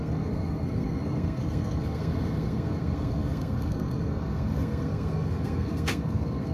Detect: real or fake fake